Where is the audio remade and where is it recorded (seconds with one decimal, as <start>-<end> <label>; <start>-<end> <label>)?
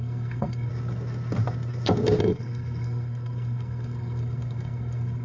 0.0-0.7 remade; 0.7-2.2 recorded; 2.2-5.2 remade